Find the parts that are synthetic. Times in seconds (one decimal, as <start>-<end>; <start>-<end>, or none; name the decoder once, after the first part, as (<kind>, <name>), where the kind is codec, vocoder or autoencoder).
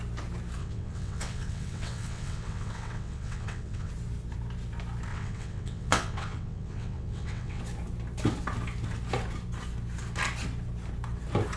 0.6-3.9 (vocoder, WaveNeXt); 5.1-7.6